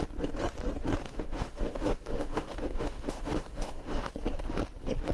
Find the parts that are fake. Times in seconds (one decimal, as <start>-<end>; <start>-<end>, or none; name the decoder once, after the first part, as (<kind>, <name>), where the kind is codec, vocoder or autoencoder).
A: 1.0-4.1 (autoencoder, DAC-VAE)